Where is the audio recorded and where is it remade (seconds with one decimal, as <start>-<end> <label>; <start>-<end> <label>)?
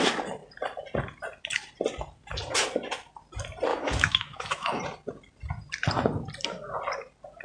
0.0-3.7 recorded; 3.7-4.8 remade; 4.8-7.4 recorded